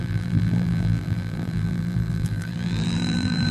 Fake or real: fake